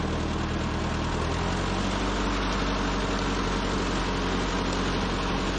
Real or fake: real